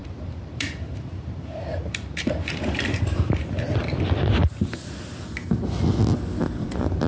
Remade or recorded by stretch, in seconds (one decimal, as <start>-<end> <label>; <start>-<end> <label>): 0.0-3.4 remade; 3.4-4.4 recorded; 4.4-5.3 remade; 5.3-6.6 recorded; 6.6-7.1 remade